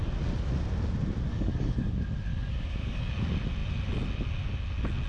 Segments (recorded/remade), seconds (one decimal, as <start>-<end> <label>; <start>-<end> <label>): 0.0-1.3 recorded; 1.3-1.9 remade; 1.9-2.3 recorded; 2.3-3.1 remade; 3.1-5.1 recorded